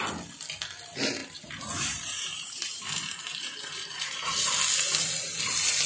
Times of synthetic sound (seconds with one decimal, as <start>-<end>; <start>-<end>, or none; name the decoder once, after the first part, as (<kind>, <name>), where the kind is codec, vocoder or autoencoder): 1.2-4.6 (vocoder, BigVGAN v2)